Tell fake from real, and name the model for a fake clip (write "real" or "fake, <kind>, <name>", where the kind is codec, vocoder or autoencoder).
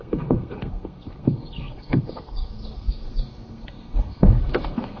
fake, codec, SNAC